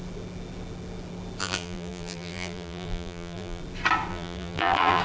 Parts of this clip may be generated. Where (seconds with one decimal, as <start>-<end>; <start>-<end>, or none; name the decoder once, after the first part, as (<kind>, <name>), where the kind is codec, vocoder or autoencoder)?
1.4-3.6 (vocoder, BigVGAN v2); 4.1-5.0